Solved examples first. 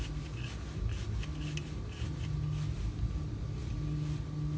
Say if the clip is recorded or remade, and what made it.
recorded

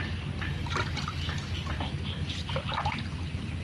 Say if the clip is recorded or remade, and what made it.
recorded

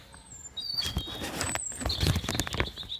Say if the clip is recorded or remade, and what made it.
recorded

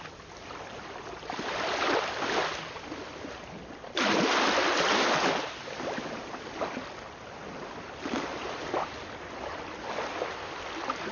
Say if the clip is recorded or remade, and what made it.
recorded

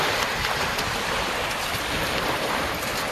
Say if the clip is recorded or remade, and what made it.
recorded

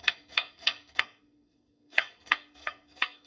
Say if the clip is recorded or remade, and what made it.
remade, codec, SNAC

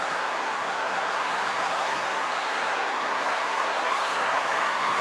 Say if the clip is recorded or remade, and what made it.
remade, codec, SNAC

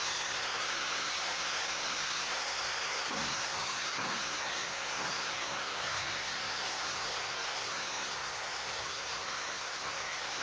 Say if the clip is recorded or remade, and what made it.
remade, codec, SNAC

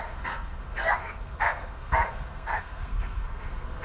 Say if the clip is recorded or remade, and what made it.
remade, codec, SNAC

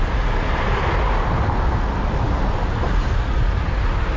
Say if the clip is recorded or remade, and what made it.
recorded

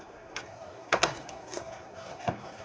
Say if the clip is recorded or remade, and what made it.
remade, codec, SNAC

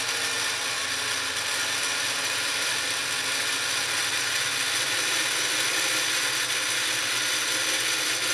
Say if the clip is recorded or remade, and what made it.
recorded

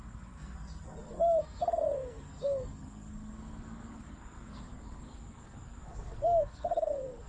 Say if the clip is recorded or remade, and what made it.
remade, codec, SNAC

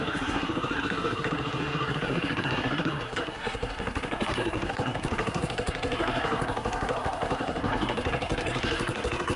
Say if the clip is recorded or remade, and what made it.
remade, codec, SNAC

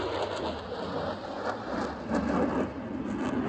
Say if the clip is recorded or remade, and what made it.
recorded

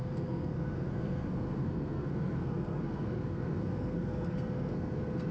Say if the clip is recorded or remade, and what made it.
remade, codec, SNAC